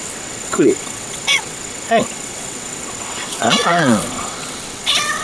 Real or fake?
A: fake